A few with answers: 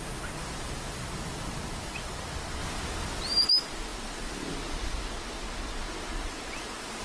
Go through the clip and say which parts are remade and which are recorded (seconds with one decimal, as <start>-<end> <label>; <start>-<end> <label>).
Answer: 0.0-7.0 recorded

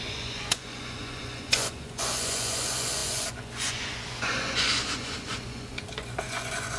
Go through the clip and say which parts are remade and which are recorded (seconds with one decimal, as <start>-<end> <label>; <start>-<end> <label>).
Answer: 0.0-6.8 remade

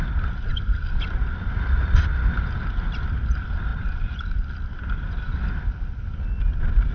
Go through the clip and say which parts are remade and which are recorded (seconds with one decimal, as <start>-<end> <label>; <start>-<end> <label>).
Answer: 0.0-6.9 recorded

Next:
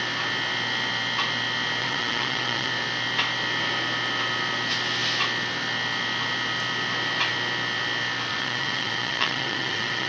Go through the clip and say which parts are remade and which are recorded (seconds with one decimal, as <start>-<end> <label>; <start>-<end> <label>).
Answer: 0.0-1.8 recorded; 1.8-2.7 remade; 2.7-8.3 recorded; 8.3-10.1 remade

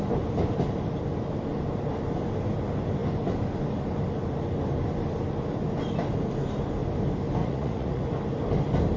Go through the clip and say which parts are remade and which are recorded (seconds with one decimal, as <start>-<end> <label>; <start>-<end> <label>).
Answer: 0.0-7.4 recorded; 7.4-8.0 remade; 8.0-9.0 recorded

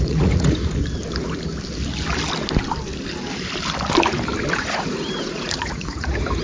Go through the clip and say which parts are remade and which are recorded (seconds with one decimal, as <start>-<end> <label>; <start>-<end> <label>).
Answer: 0.0-0.8 remade; 0.8-4.5 recorded; 4.5-6.4 remade

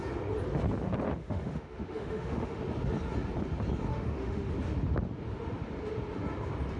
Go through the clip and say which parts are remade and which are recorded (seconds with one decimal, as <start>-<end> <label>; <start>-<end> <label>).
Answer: 0.0-1.2 recorded; 1.2-2.6 remade; 2.6-3.9 recorded; 3.9-4.5 remade; 4.5-6.8 recorded

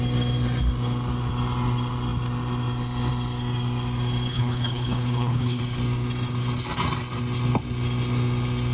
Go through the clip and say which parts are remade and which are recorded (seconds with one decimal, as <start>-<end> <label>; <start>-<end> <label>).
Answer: 0.0-4.3 recorded; 4.3-5.6 remade; 5.6-8.7 recorded